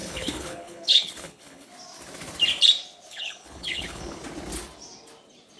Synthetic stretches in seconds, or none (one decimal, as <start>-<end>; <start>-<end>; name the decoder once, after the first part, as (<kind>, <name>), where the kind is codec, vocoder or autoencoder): 0.0-1.7 (codec, HILCodec); 3.1-4.2